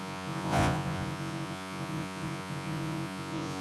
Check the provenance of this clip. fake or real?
fake